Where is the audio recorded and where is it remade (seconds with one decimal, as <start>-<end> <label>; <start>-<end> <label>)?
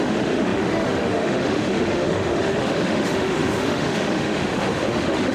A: 0.0-5.3 remade